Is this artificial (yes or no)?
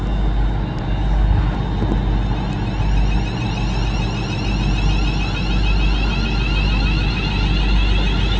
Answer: no